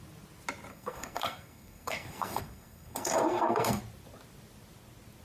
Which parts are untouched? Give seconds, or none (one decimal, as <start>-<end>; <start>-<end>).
0.0-0.7; 3.8-5.2